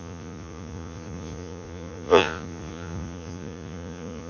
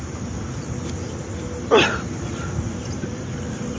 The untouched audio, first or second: second